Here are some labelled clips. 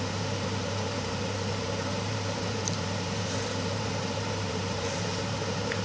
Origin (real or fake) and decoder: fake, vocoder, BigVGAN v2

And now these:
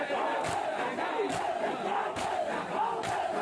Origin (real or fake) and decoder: real